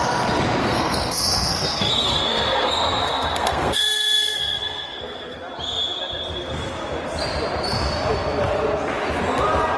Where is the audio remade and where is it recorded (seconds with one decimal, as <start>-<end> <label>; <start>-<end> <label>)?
0.0-0.6 recorded; 0.6-5.4 remade; 5.4-9.8 recorded